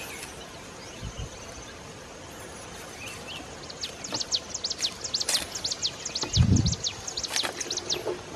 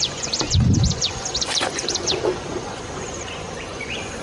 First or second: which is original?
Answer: first